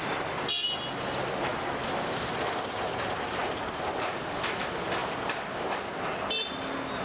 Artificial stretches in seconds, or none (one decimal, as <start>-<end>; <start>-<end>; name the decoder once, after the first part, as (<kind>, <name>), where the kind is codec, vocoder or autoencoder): none